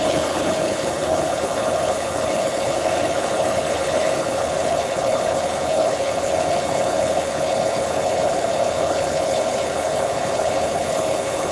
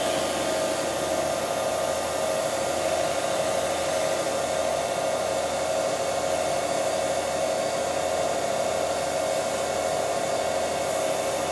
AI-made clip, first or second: first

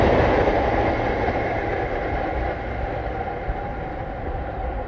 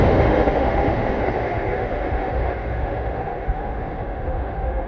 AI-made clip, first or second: second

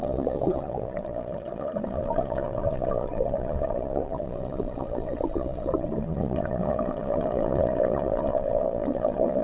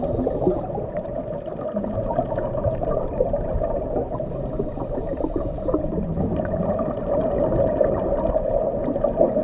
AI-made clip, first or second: first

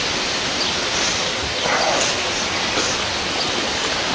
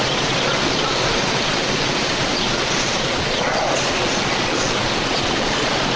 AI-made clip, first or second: second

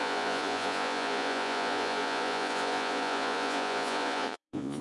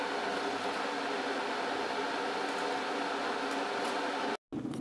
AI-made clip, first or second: first